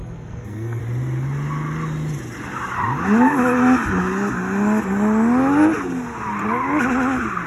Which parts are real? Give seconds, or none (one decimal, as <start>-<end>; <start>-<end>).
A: 0.8-7.5